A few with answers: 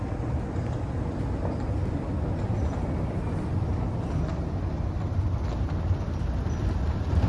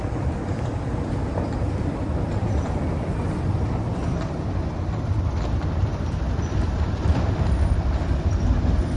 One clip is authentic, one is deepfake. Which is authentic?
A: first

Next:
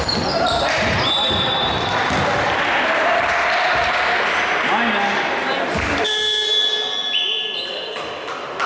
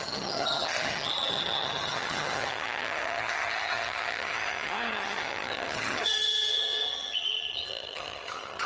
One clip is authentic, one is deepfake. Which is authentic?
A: first